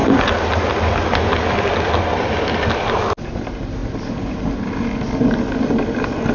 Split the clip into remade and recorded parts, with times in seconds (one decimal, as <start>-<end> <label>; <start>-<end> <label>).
0.0-6.3 recorded